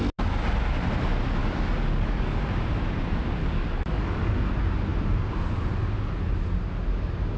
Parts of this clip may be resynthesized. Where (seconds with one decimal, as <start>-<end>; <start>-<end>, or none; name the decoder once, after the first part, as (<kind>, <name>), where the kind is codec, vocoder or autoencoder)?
1.4-2.4 (codec, DAC); 3.4-4.5